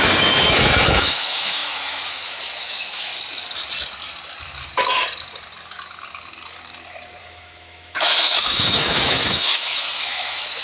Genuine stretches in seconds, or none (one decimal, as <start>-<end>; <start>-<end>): 3.1-7.2